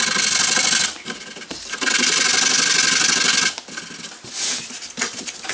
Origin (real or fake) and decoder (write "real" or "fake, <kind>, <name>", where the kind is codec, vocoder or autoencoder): real